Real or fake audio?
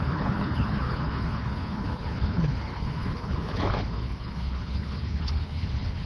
fake